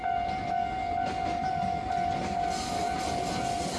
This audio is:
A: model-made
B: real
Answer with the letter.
B